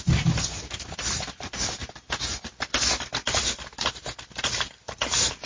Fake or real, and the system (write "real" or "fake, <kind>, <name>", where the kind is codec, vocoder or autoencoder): real